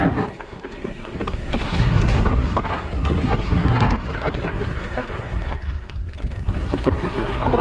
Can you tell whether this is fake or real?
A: fake